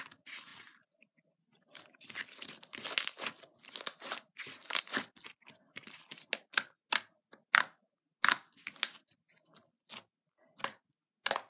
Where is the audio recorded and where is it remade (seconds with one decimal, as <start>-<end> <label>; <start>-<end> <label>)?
0.0-11.5 recorded